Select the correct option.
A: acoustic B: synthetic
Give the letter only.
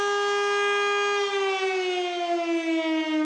A